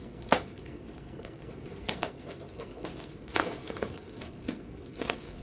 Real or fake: fake